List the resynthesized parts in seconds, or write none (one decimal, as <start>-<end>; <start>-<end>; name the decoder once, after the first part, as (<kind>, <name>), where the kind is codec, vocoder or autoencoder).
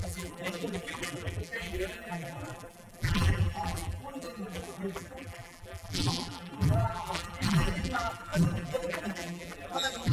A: 0.0-10.1 (vocoder, BigVGAN v2)